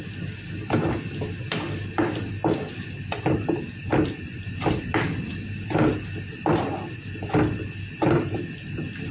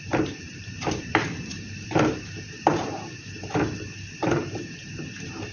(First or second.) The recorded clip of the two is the first